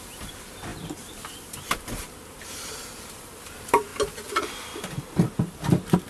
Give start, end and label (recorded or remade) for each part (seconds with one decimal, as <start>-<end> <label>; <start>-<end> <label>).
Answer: 0.0-3.9 remade; 3.9-6.1 recorded